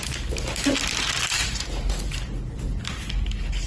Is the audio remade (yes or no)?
no